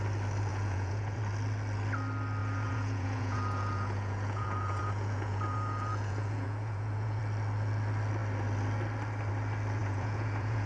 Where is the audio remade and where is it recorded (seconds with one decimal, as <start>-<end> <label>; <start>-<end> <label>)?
0.0-0.5 recorded; 0.5-1.2 remade; 1.2-2.4 recorded; 2.4-7.2 remade; 7.2-9.8 recorded; 9.8-10.7 remade